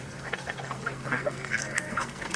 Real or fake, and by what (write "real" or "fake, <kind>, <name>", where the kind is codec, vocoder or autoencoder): fake, codec, SNAC